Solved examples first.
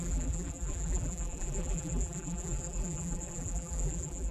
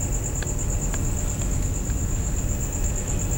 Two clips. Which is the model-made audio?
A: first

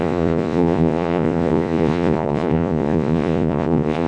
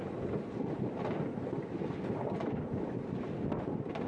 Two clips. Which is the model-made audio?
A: first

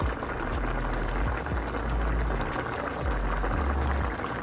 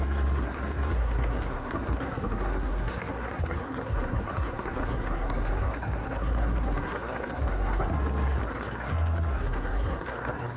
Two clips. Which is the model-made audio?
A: second